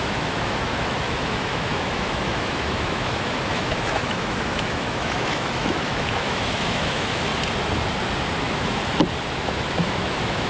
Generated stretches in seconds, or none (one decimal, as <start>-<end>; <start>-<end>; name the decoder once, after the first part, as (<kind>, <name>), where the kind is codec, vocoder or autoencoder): 0.0-7.3 (autoencoder, DAC-VAE); 8.4-8.8; 9.4-10.5